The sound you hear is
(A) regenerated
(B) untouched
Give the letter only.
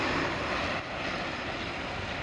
B